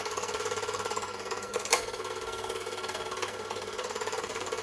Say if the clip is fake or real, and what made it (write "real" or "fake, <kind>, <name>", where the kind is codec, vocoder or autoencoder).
fake, codec, SNAC